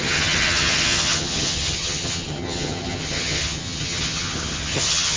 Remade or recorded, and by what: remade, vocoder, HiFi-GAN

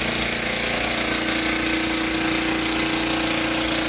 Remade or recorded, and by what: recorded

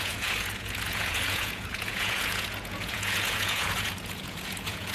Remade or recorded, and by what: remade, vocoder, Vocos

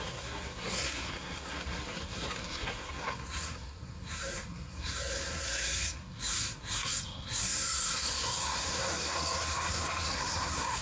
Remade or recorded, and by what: remade, codec, SNAC